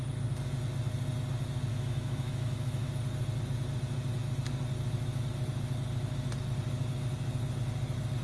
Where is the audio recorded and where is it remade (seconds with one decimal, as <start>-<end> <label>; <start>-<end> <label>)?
0.0-1.7 recorded; 1.7-2.9 remade; 2.9-8.2 recorded